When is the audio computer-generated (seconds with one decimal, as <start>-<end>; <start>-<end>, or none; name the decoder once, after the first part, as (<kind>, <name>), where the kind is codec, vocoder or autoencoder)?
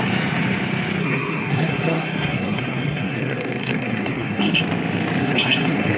1.0-4.6 (codec, SNAC); 5.2-6.0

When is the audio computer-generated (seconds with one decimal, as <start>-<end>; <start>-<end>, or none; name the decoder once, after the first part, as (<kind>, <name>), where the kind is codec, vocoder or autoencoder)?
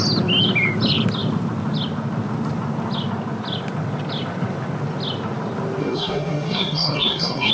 5.8-7.5 (codec, SNAC)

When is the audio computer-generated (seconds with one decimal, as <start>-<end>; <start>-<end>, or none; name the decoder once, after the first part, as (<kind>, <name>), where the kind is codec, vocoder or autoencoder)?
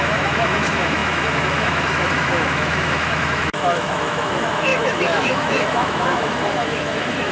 0.0-7.3 (autoencoder, DAC-VAE)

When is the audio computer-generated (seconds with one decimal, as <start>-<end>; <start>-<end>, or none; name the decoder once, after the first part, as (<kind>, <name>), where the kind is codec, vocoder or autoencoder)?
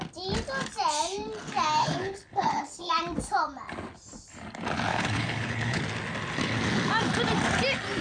1.8-2.9 (codec, HILCodec); 4.9-5.8